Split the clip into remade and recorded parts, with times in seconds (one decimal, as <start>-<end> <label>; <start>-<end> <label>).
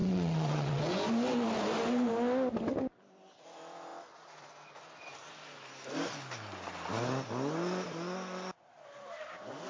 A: 0.0-0.8 remade; 0.8-9.7 recorded